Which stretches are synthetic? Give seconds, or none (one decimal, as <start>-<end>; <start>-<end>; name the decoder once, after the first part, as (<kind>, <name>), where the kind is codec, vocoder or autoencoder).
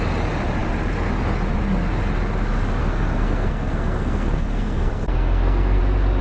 2.8-5.8 (codec, SNAC)